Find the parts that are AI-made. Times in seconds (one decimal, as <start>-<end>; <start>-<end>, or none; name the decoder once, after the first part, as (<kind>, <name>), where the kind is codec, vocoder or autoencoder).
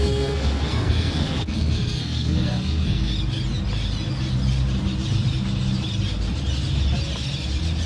0.0-3.1 (codec, SNAC)